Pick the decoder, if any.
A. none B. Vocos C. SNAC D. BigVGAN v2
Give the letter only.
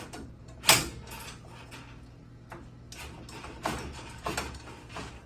A